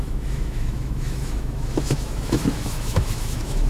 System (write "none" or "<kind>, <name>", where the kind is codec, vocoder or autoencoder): autoencoder, DAC-VAE